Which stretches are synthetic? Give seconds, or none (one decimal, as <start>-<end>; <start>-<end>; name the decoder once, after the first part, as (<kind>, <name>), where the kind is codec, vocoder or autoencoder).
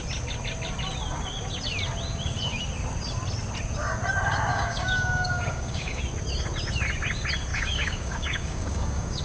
4.5-6.0 (codec, DAC); 7.5-9.2